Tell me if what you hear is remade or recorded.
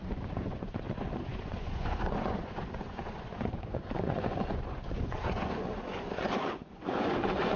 remade